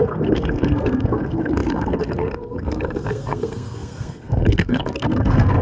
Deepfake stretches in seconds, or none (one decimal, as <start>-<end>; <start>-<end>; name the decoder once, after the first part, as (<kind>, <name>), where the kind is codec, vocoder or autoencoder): 0.0-5.6 (codec, SNAC)